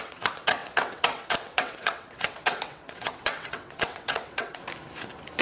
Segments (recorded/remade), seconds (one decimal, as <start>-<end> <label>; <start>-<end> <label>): 0.0-4.6 remade; 4.6-5.4 recorded